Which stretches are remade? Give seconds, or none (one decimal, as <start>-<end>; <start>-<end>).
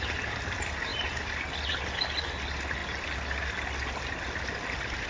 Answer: none